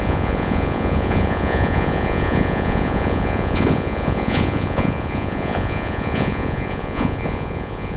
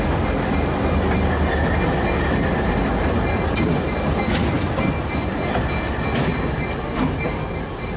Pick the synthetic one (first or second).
first